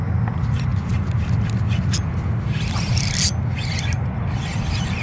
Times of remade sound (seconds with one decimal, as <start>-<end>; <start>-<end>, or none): 0.7-1.3